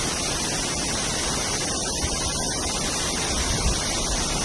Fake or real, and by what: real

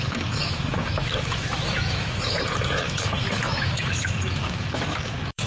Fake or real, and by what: fake, autoencoder, DAC-VAE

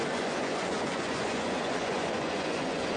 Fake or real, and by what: fake, vocoder, Vocos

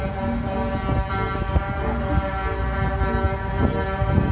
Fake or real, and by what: real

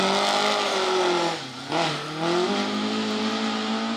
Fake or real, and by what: real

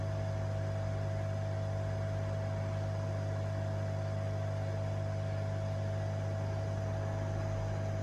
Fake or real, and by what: real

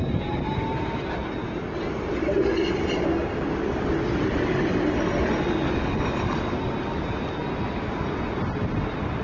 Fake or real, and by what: real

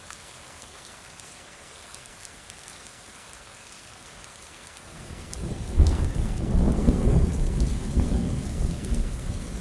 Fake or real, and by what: fake, codec, SNAC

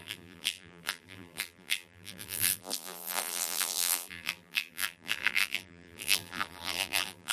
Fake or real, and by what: fake, vocoder, BigVGAN v2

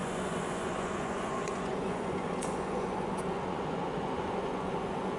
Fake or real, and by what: fake, vocoder, Vocos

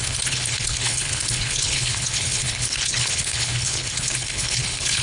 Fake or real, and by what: fake, codec, HILCodec